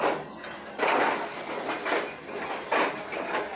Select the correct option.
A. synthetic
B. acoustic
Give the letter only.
B